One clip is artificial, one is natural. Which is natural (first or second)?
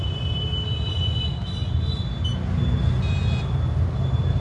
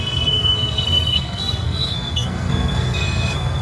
first